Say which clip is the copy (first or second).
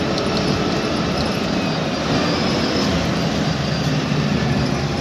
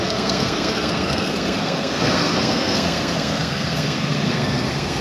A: second